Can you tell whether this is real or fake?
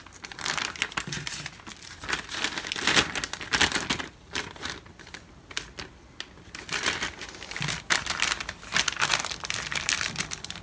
real